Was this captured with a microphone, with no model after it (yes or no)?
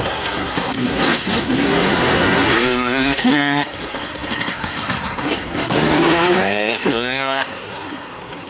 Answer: no